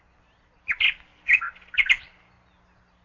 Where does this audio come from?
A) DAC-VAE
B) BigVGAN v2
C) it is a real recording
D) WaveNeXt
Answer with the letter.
C